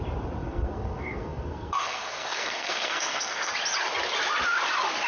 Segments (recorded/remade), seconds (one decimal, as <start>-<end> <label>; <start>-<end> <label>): 0.0-0.4 recorded; 0.4-3.5 remade; 3.5-5.1 recorded